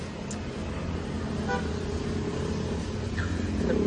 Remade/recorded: recorded